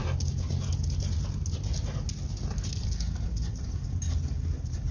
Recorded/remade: recorded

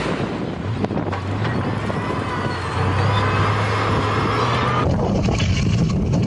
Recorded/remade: recorded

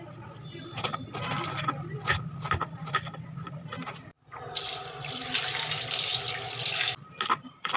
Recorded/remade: recorded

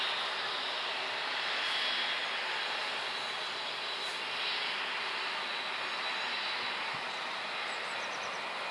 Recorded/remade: recorded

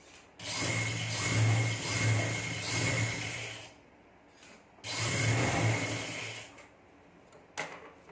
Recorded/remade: recorded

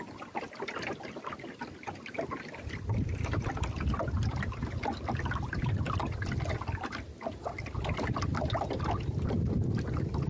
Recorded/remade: recorded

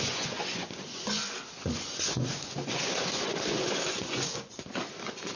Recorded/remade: remade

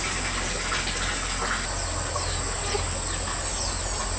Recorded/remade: recorded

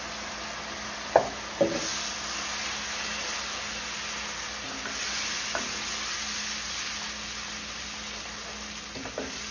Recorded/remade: recorded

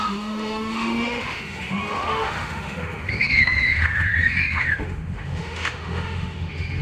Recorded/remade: remade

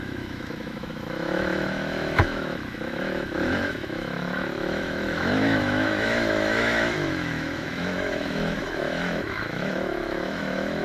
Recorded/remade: remade